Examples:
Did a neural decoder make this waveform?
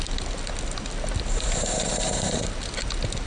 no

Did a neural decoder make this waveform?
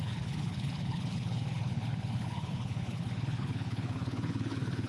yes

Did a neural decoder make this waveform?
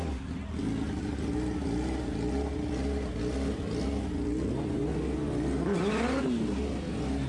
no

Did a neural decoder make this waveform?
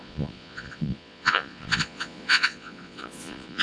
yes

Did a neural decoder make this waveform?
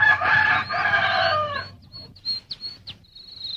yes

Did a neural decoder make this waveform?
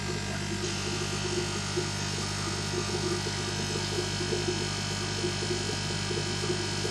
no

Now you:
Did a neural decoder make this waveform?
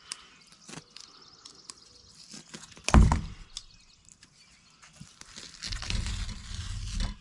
no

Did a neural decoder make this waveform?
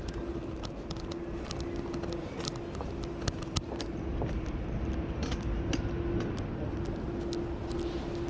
no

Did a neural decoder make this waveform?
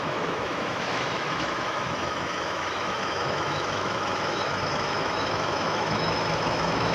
yes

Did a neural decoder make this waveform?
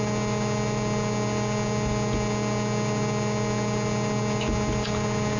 no